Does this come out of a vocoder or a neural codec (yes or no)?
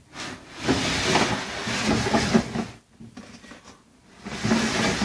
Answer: no